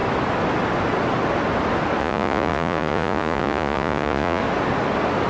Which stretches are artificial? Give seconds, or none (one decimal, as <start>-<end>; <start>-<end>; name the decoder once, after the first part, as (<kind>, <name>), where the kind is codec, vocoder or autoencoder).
2.0-4.4 (vocoder, Vocos)